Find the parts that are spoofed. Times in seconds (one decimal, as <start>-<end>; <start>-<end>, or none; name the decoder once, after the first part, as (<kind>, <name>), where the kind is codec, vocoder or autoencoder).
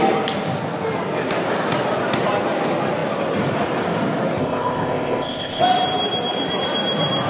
4.4-5.6 (codec, ZipCodec)